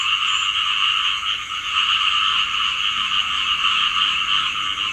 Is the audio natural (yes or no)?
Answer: yes